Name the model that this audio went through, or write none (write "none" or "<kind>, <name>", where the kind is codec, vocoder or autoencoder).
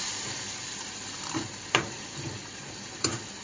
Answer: vocoder, BigVGAN v2